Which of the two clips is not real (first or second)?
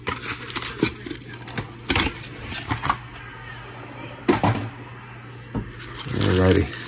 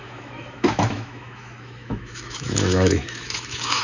second